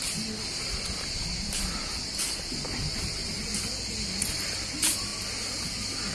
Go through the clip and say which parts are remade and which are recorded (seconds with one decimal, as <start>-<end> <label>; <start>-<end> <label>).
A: 0.0-6.1 recorded